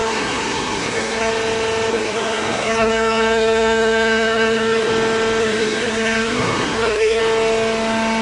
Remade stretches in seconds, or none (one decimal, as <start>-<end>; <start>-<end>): 0.0-1.3; 1.9-4.9; 5.4-7.2